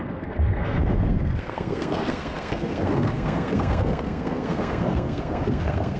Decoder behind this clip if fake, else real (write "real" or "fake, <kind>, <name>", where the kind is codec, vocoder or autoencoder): fake, codec, SNAC